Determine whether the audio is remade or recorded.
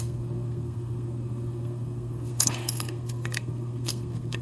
remade